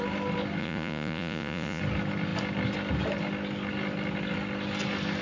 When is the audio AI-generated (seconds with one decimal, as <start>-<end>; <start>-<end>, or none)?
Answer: 0.6-1.8

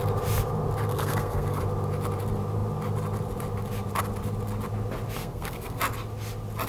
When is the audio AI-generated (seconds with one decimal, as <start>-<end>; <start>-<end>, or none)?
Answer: 0.9-1.6; 5.2-5.8

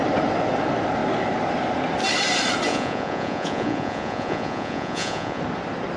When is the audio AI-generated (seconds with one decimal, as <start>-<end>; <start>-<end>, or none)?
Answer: 2.7-5.4

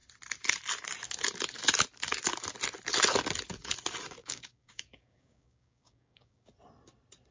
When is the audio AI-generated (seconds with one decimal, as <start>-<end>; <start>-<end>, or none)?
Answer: 4.2-6.5

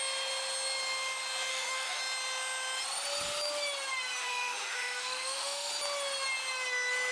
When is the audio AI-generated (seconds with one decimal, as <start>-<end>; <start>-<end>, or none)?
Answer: 1.5-2.0; 4.2-5.7